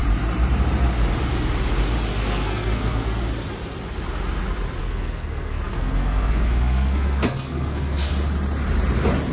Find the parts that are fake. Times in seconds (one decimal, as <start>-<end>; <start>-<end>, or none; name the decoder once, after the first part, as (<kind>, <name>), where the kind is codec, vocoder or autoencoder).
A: 2.1-3.2 (codec, SNAC); 4.8-8.1